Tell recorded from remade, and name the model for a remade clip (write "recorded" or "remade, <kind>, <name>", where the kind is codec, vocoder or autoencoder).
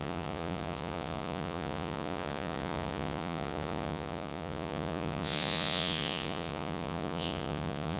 remade, vocoder, Vocos